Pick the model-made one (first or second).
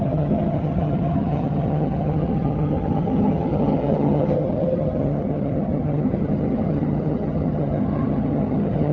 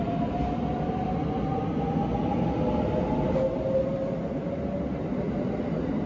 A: first